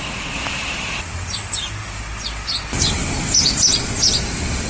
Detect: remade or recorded recorded